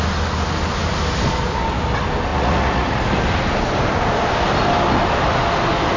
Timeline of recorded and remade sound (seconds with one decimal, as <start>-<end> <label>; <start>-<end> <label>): 0.0-2.3 recorded; 2.3-3.0 remade; 3.0-6.0 recorded